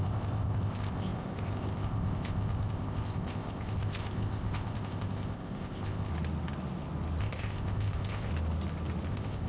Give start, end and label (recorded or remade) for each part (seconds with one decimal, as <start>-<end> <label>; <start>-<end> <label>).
0.0-6.1 remade; 6.1-7.2 recorded; 7.2-8.3 remade; 8.3-9.1 recorded; 9.1-9.5 remade